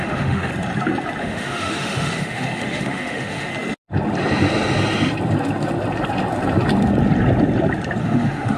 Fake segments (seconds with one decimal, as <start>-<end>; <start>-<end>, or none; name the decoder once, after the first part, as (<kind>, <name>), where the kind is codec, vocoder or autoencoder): 0.0-0.5 (autoencoder, DAC-VAE); 1.2-3.5; 8.0-8.6